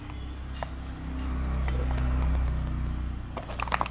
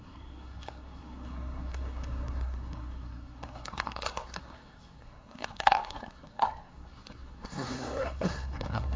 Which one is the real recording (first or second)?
first